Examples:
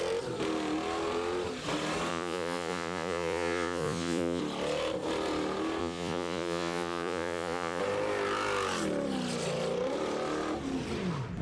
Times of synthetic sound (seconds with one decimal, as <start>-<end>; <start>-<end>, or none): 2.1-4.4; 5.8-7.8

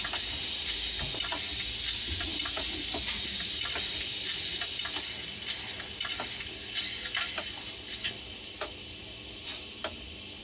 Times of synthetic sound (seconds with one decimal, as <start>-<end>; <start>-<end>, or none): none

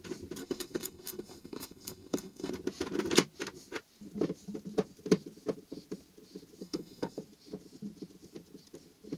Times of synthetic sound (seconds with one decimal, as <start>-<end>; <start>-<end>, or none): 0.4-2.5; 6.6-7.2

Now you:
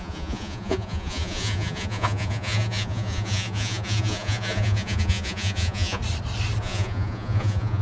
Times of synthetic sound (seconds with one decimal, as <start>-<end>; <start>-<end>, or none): 0.0-6.0; 6.6-7.8

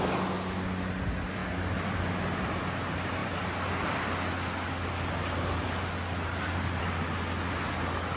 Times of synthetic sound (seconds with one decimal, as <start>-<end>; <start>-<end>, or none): none

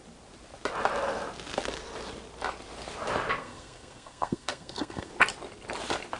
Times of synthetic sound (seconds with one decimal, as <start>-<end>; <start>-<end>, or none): 3.4-5.1